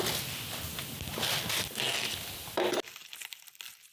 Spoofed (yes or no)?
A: no